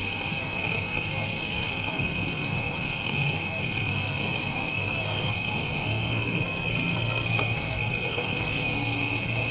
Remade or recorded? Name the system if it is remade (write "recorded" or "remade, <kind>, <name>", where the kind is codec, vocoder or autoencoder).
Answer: remade, codec, SNAC